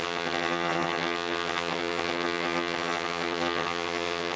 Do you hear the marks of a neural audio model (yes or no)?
yes